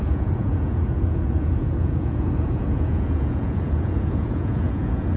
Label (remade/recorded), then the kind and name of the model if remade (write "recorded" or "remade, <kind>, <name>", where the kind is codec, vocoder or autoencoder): remade, vocoder, Vocos